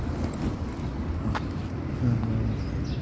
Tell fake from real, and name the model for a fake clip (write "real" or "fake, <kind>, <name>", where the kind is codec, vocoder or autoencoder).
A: real